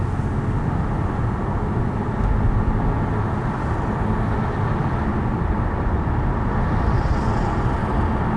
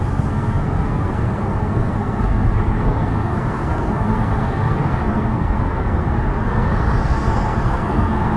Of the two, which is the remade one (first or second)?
second